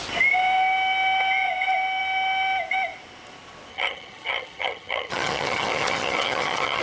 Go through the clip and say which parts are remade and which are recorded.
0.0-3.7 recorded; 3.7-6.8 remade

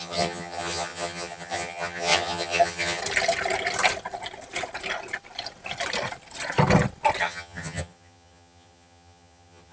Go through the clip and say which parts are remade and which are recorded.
0.0-3.0 remade; 3.0-7.2 recorded; 7.2-9.7 remade